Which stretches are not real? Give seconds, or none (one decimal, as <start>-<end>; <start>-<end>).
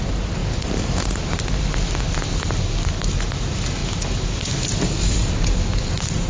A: none